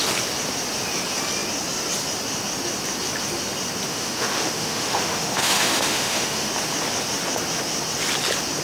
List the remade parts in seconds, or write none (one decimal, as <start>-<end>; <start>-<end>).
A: 3.9-6.5